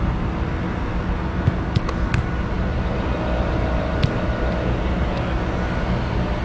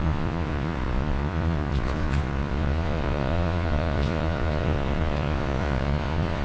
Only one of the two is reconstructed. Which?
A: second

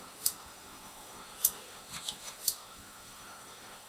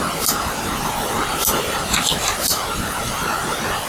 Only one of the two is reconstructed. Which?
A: first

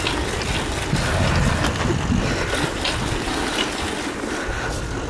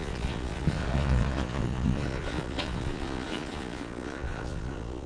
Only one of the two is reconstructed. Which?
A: second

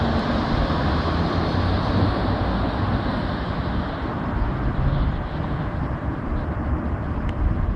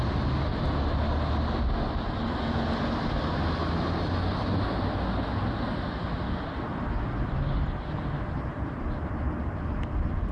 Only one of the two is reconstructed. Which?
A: first